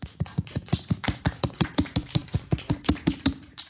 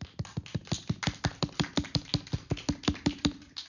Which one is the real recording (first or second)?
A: second